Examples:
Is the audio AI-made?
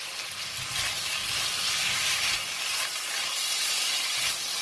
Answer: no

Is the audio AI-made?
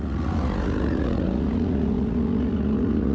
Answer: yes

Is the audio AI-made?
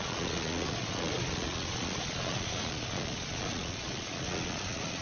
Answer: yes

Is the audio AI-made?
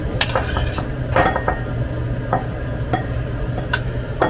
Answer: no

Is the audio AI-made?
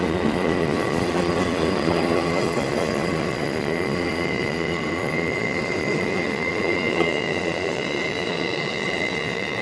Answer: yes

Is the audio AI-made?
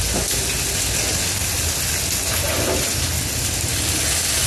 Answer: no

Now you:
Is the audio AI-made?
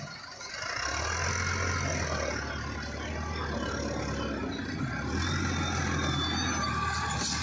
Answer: no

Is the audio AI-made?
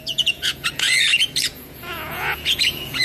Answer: yes